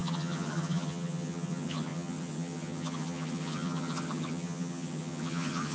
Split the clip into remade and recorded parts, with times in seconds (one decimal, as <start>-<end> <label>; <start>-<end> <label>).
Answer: 0.0-5.7 remade